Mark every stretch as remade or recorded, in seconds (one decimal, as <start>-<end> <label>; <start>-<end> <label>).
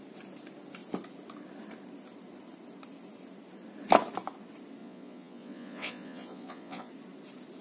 0.0-4.8 recorded; 4.8-6.9 remade; 6.9-7.6 recorded